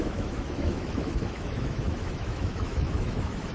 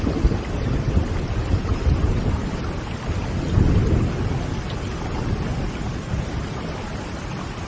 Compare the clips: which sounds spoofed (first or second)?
first